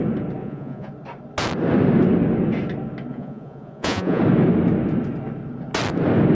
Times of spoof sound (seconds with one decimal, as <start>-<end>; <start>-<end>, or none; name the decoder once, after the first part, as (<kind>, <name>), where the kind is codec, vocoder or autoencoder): 0.4-0.9 (vocoder, Vocos); 3.1-4.2